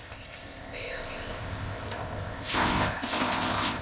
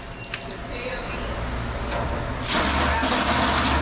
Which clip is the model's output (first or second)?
first